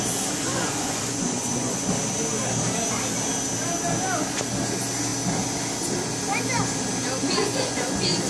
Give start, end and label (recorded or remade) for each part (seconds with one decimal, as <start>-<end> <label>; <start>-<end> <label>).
0.0-0.5 recorded; 0.5-1.9 remade; 1.9-7.2 recorded; 7.2-8.3 remade